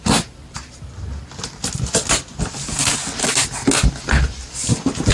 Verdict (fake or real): real